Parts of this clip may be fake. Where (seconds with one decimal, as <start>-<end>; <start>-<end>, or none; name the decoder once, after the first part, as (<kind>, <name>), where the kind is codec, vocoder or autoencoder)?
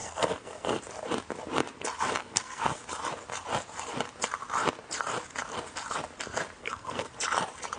0.0-0.8 (codec, SNAC); 2.2-2.8; 6.6-7.1